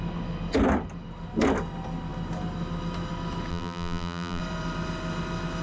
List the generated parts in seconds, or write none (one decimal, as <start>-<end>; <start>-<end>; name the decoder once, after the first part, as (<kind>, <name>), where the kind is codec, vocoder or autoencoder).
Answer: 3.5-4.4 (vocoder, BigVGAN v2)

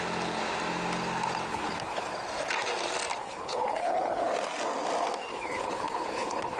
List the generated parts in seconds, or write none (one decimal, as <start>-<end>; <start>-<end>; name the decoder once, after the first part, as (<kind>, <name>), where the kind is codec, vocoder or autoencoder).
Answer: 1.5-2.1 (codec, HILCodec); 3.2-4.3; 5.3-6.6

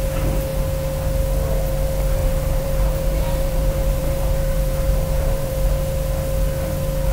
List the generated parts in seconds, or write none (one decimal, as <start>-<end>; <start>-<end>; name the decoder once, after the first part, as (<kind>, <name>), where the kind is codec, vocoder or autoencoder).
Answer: 2.2-5.7 (vocoder, BigVGAN v2)